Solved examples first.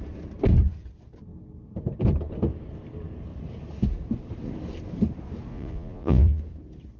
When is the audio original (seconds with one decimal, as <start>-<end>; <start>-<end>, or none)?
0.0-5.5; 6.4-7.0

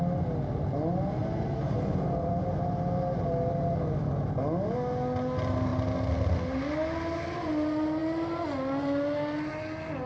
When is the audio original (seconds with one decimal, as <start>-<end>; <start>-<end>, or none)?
0.0-1.2; 4.0-10.1

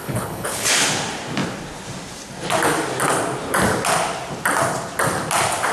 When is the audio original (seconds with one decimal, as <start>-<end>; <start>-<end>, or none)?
0.7-5.7

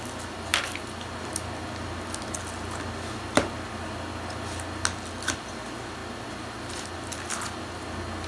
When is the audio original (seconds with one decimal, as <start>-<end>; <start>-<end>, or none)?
0.0-8.3

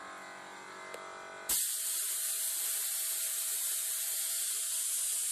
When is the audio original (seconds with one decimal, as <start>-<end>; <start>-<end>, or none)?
0.0-5.3